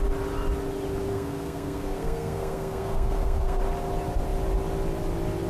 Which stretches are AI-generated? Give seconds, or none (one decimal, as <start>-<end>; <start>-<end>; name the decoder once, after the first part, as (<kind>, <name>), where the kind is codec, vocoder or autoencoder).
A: 1.1-3.6 (codec, SNAC)

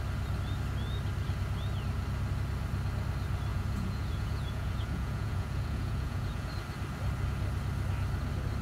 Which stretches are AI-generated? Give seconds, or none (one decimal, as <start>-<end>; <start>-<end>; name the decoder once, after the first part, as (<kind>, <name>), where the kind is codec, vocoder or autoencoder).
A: 3.5-6.5 (vocoder, Vocos)